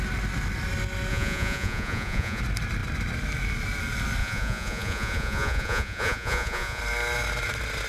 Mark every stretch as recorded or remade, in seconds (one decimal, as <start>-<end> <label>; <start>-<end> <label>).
0.0-1.1 recorded; 1.1-2.4 remade; 2.4-4.2 recorded; 4.2-6.8 remade; 6.8-7.9 recorded